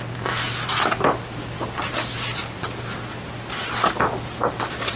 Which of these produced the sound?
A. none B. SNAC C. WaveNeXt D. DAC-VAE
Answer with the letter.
A